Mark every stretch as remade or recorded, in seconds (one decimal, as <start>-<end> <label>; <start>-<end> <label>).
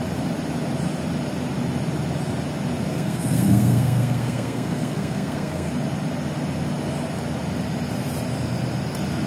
0.0-2.9 recorded; 2.9-5.7 remade; 5.7-9.3 recorded